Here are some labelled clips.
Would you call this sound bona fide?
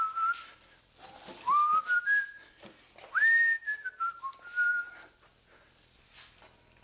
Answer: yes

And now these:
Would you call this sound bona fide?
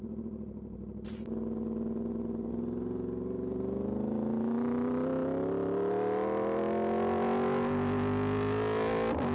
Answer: yes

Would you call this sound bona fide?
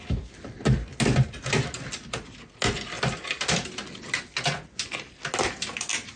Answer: yes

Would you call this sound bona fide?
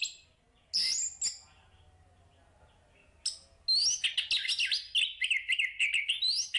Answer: yes